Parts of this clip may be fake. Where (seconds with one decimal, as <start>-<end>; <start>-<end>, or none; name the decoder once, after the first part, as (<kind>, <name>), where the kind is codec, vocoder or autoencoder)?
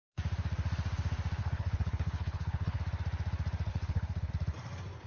1.4-2.8 (codec, HILCodec); 3.7-4.3